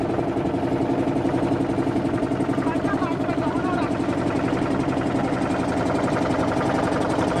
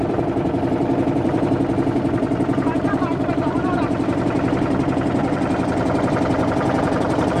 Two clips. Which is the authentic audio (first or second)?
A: first